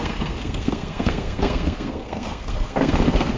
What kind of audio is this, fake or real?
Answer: fake